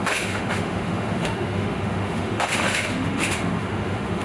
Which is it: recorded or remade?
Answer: remade